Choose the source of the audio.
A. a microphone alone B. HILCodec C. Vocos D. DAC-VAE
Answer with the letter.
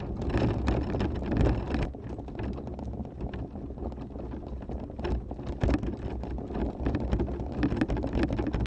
A